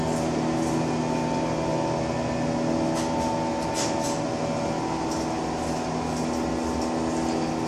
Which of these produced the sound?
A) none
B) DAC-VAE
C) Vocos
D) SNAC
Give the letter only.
A